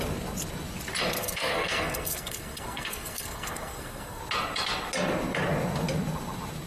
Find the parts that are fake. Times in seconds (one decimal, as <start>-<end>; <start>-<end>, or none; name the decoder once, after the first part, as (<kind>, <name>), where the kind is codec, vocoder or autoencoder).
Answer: 1.2-4.2 (codec, SNAC)